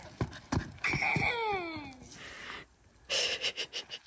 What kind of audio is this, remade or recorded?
recorded